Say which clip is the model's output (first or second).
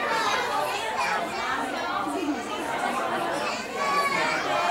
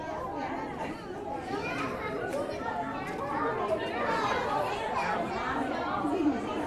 second